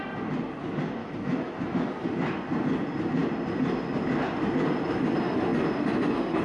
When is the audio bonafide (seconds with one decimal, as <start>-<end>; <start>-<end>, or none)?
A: 0.0-1.0; 1.9-6.4